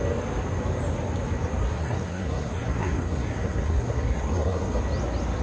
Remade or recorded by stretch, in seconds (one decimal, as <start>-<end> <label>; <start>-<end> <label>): 0.0-1.6 recorded; 1.6-4.8 remade; 4.8-5.4 recorded